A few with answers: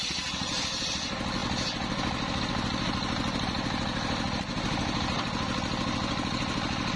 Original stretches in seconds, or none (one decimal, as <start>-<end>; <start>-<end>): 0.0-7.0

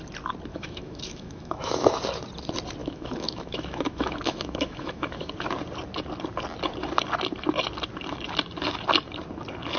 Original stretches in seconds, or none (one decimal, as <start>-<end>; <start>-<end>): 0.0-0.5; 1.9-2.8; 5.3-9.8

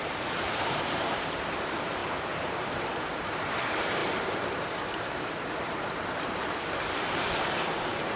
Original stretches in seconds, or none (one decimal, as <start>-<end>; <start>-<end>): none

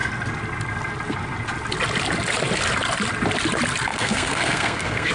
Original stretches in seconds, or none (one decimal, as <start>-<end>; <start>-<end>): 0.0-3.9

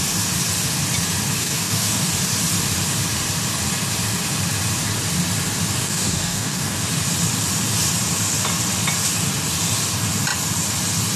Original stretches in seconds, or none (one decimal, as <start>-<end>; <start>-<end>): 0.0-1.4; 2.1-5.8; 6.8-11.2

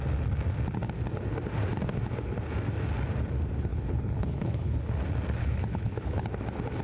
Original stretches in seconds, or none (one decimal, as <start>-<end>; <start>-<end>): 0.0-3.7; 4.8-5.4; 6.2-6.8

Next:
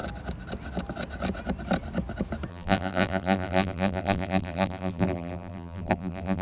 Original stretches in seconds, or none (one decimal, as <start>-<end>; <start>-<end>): 0.0-2.5